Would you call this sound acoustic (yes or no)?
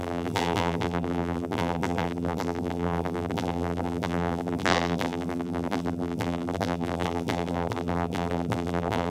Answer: no